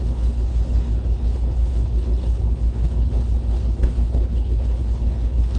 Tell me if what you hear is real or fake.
fake